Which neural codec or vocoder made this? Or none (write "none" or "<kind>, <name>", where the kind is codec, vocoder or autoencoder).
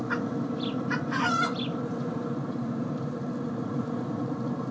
vocoder, BigVGAN v2